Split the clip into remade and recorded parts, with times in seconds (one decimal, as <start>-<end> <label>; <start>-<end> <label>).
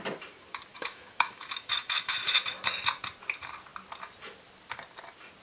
0.0-0.7 recorded; 0.7-2.6 remade; 2.6-5.4 recorded